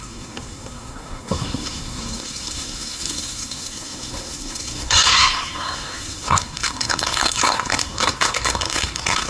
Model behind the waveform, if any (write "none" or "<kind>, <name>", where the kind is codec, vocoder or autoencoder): codec, SNAC